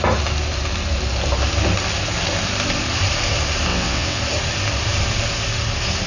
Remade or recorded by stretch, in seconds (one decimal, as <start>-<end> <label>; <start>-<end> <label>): 0.0-3.7 recorded; 3.7-4.2 remade; 4.2-6.1 recorded